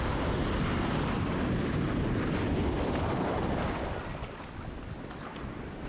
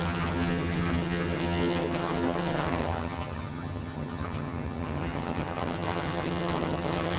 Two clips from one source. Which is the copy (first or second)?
second